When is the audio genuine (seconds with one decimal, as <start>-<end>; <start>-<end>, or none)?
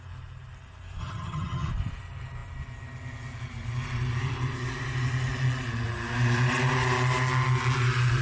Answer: 0.0-1.0; 1.7-8.2